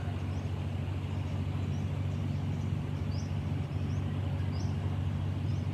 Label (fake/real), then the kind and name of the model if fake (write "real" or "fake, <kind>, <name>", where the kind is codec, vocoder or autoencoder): real